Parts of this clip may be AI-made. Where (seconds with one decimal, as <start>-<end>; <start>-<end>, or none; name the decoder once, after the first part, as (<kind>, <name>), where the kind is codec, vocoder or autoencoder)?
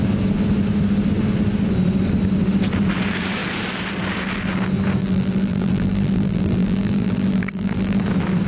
5.0-8.0 (vocoder, BigVGAN v2)